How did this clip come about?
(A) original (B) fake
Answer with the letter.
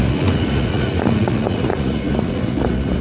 B